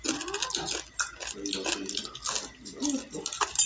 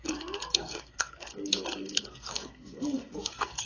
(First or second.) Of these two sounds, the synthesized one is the second